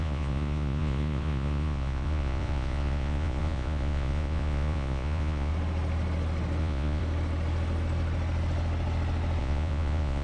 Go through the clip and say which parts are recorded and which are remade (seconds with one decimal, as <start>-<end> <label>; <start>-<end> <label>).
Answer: 0.0-5.5 remade; 5.5-6.6 recorded; 6.6-7.0 remade; 7.0-9.4 recorded; 9.4-10.2 remade